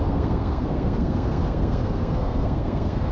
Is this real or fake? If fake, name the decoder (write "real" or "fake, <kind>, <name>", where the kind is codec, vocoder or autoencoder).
fake, codec, SNAC